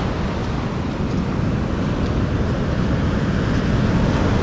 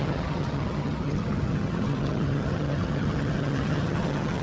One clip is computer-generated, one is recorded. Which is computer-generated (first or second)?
second